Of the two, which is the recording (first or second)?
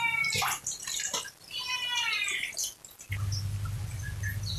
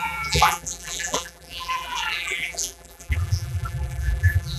first